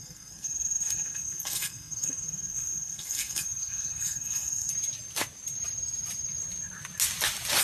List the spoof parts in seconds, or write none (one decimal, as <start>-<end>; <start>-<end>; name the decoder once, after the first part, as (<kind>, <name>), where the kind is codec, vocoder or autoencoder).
0.0-4.7 (codec, SNAC)